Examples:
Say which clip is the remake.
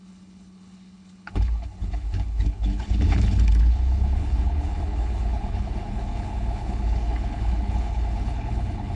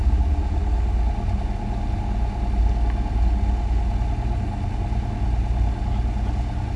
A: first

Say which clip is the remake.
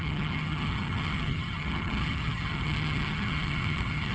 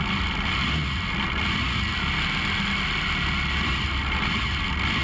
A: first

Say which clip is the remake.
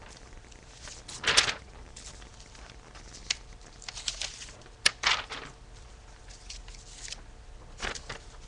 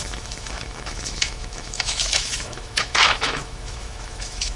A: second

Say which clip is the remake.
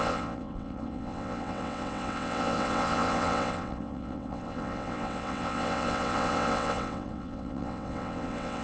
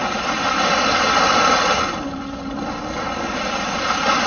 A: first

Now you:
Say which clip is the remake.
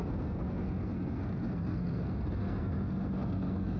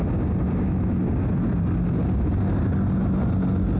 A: first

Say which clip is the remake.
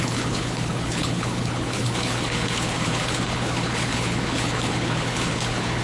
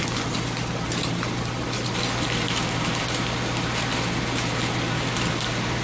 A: first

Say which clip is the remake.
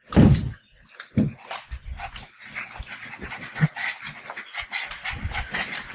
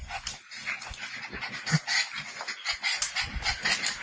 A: first